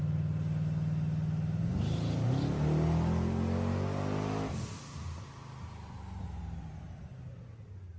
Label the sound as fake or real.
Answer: real